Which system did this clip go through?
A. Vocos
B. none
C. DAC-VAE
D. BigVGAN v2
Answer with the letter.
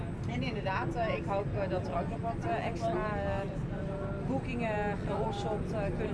B